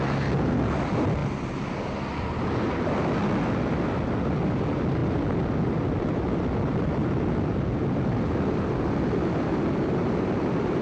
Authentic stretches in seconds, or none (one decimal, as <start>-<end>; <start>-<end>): 0.0-10.8